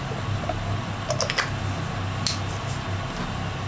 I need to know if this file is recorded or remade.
recorded